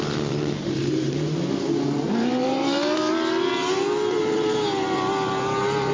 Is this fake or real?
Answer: fake